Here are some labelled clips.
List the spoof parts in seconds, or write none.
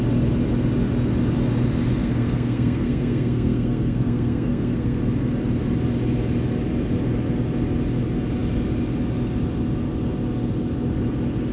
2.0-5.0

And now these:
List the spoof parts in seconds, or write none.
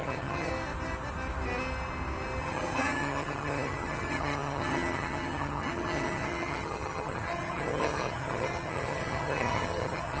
0.0-0.5; 2.4-10.2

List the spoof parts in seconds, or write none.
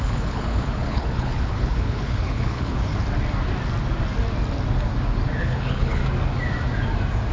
0.0-2.9; 5.4-6.0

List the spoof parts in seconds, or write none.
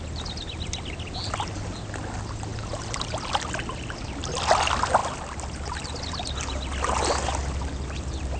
none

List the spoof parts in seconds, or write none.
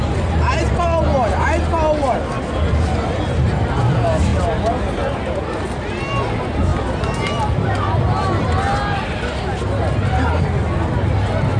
none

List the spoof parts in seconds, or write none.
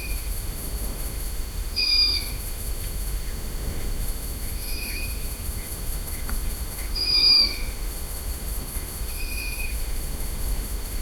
0.0-11.0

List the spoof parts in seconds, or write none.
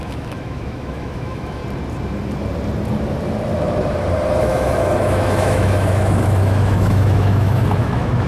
0.0-1.6; 4.4-8.3